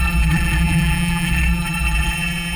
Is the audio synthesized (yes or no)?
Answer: yes